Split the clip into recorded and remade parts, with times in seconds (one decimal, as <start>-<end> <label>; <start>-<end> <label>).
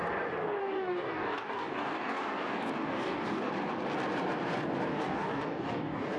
0.0-0.6 recorded; 0.6-3.5 remade; 3.5-4.9 recorded; 4.9-6.2 remade